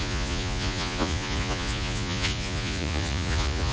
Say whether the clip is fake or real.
fake